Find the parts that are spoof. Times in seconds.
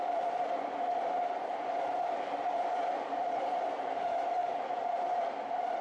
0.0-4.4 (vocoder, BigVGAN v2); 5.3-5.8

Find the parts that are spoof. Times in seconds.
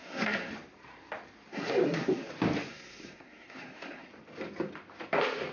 0.0-0.5 (codec, SNAC); 1.5-2.3; 2.7-4.1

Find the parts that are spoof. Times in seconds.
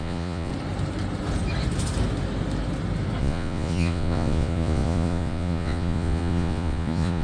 0.0-0.5 (vocoder, Vocos); 3.2-7.2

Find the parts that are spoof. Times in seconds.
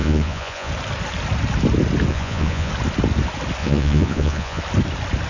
0.0-0.7 (vocoder, Vocos); 2.1-2.7; 3.6-4.6